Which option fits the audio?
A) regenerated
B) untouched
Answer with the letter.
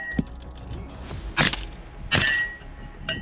B